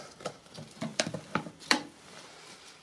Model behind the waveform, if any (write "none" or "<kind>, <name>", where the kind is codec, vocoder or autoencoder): vocoder, BigVGAN v2